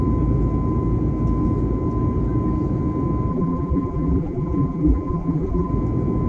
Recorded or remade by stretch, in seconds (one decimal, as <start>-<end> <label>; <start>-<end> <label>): 0.0-3.3 recorded; 3.3-5.7 remade; 5.7-6.3 recorded

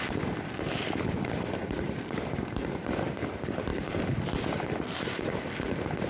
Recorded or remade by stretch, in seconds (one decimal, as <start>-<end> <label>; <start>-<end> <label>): 0.0-6.1 recorded

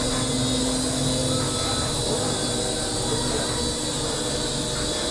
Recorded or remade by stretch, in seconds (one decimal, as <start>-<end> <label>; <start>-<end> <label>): 0.0-5.1 recorded

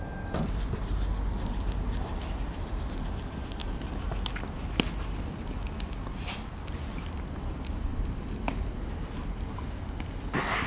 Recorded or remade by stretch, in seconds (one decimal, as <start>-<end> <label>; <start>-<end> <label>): 0.0-10.7 recorded

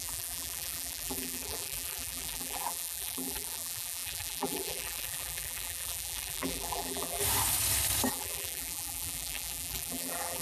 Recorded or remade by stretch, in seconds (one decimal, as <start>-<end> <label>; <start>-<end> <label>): 0.0-7.2 remade; 7.2-8.1 recorded; 8.1-10.4 remade

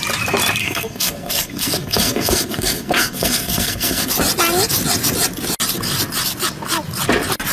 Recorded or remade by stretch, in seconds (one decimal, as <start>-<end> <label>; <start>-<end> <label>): 0.0-0.6 recorded; 0.6-4.1 remade; 4.1-7.5 recorded

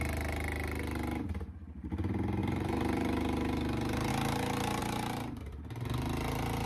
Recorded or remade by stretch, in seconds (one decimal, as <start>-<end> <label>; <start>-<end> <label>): 0.0-2.4 recorded; 2.4-4.1 remade; 4.1-4.8 recorded; 4.8-5.4 remade; 5.4-6.7 recorded

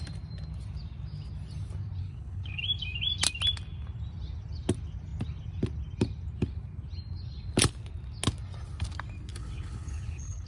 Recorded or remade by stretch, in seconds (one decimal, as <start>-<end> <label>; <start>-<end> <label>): 0.0-2.0 recorded; 2.0-2.6 remade; 2.6-9.3 recorded; 9.3-10.5 remade